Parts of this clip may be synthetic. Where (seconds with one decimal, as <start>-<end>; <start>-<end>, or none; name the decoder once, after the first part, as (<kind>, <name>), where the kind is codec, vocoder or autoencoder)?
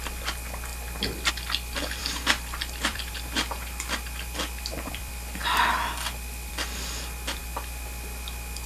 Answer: 2.0-6.5 (vocoder, BigVGAN v2); 7.4-8.7